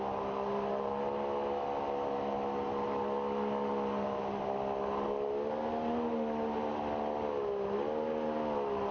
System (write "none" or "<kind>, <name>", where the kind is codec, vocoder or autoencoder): none